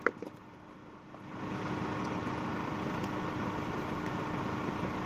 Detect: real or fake real